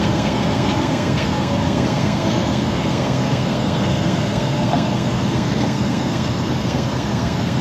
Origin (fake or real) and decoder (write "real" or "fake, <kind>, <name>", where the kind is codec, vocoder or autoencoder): fake, codec, SNAC